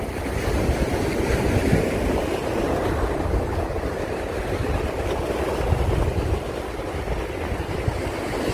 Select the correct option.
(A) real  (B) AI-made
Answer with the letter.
A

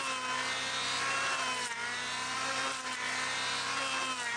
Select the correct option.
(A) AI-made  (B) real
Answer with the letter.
B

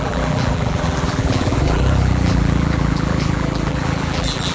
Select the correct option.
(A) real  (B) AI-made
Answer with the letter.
B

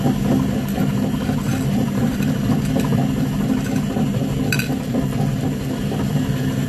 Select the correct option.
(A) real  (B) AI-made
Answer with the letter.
A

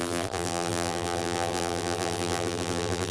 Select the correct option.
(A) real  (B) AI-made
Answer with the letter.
B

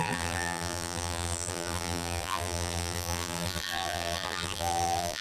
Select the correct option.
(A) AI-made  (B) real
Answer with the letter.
A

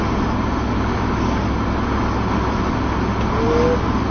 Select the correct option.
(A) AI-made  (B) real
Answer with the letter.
B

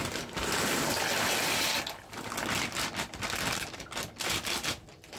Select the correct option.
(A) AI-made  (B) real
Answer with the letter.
B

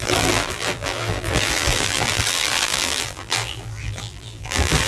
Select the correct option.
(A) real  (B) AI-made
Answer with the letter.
B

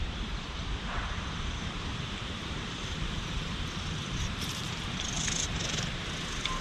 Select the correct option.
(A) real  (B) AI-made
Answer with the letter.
B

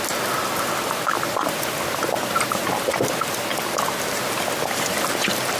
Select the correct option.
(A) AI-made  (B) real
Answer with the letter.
B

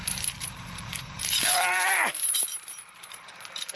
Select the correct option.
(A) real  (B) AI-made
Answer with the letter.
B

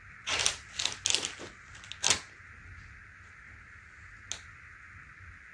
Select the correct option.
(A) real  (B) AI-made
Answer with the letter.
A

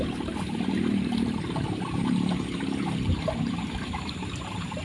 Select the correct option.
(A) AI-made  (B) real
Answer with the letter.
A